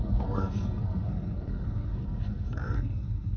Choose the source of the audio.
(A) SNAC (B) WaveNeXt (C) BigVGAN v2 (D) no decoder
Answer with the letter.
A